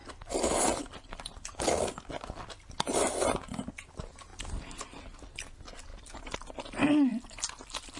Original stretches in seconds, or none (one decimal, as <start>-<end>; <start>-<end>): 3.7-7.1